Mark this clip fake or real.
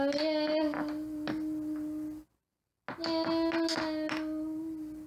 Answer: real